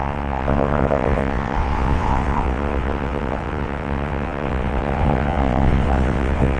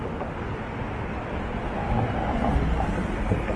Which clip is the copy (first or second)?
first